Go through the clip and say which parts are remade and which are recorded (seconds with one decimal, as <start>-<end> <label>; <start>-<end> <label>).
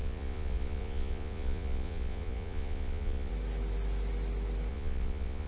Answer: 0.0-3.3 remade; 3.3-4.7 recorded; 4.7-5.5 remade